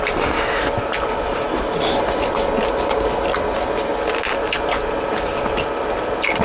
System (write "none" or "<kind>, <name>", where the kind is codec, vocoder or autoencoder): none